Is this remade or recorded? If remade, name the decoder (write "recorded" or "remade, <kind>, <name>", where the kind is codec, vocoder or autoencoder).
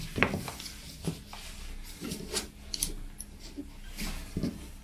recorded